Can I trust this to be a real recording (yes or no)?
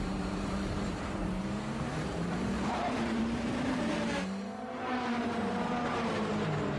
no